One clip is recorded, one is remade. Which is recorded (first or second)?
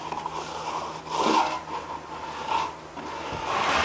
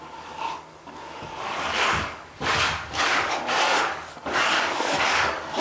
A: first